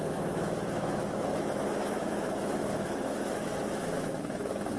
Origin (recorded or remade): remade